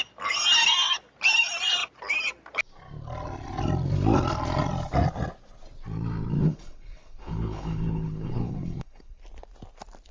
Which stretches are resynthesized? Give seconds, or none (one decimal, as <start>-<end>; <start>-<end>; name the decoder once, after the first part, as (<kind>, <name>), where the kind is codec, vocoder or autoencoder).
6.4-9.2 (codec, HILCodec)